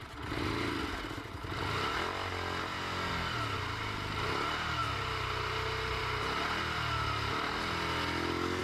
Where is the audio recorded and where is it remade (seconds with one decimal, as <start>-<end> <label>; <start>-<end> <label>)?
0.0-8.6 recorded